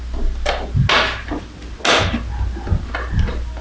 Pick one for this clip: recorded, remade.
recorded